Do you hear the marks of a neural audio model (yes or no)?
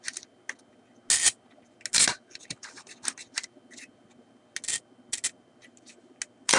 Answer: no